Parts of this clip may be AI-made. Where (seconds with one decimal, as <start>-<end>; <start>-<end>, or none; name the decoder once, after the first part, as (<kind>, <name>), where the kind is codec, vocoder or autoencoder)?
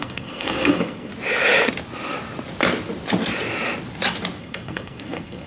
0.0-1.1 (codec, SNAC); 4.4-5.5